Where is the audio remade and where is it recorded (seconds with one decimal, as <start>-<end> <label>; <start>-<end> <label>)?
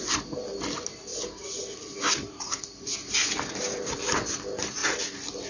0.0-1.1 recorded; 1.1-1.6 remade; 1.6-2.2 recorded; 2.2-2.8 remade; 2.8-5.5 recorded